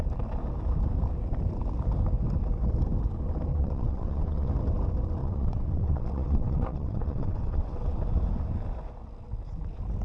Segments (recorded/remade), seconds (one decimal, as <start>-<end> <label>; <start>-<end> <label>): 0.0-3.5 recorded; 3.5-4.5 remade; 4.5-5.2 recorded; 5.2-8.0 remade; 8.0-10.0 recorded